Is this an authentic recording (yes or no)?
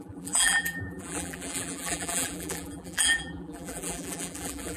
no